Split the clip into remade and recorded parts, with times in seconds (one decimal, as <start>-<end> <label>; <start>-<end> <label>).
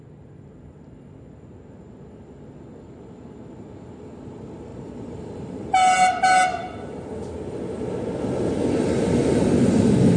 0.0-4.7 recorded; 4.7-5.5 remade; 5.5-6.5 recorded; 6.5-10.2 remade